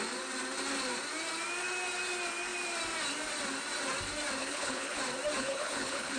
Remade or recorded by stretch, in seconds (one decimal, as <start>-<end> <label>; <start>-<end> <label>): 0.0-4.4 recorded; 4.4-5.0 remade; 5.0-5.4 recorded; 5.4-6.2 remade